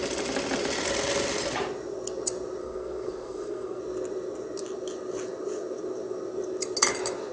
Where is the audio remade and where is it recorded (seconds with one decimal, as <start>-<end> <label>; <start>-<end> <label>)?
0.0-2.6 recorded; 2.6-3.8 remade; 3.8-7.3 recorded